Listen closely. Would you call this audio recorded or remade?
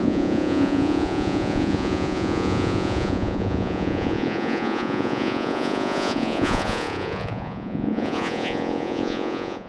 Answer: remade